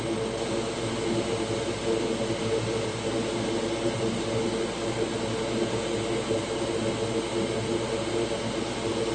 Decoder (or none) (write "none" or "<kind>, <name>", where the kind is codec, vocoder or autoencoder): none